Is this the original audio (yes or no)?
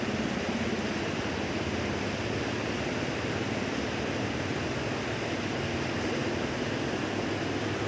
yes